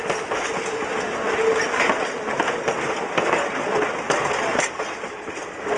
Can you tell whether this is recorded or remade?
recorded